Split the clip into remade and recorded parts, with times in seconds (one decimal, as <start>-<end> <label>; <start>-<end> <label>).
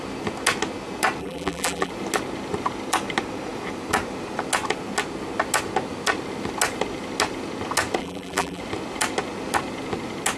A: 0.0-1.2 recorded; 1.2-1.9 remade; 1.9-8.0 recorded; 8.0-8.6 remade; 8.6-10.4 recorded